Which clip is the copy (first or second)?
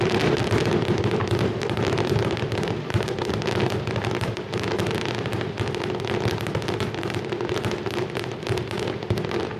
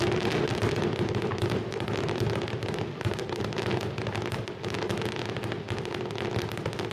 first